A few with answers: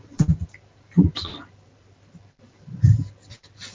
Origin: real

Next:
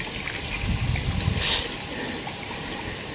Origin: real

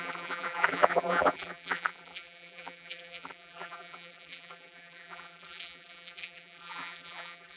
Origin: fake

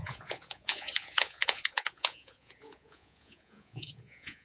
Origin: fake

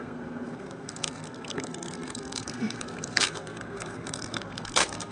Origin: fake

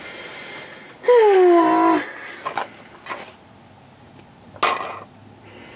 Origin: real